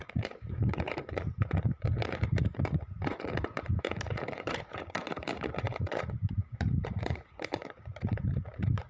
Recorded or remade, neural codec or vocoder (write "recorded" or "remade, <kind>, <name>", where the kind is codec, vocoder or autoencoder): remade, vocoder, Vocos